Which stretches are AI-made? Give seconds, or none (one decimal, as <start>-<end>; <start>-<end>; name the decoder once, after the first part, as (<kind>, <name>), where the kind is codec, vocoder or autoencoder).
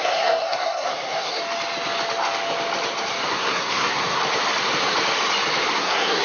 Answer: 0.0-1.4 (codec, SNAC); 3.3-4.2; 5.7-6.2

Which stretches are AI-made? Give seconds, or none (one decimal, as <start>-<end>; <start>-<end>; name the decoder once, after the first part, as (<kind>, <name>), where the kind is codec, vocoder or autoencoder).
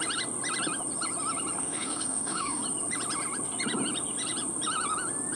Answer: 1.6-2.6 (autoencoder, DAC-VAE)